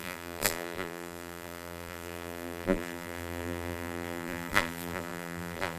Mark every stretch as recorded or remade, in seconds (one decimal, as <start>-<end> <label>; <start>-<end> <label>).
0.0-5.8 remade